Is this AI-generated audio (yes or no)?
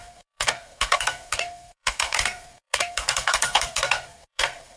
yes